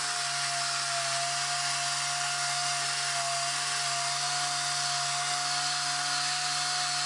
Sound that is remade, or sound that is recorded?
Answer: recorded